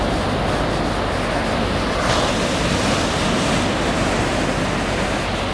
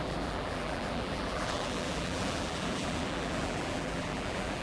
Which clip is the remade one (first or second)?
second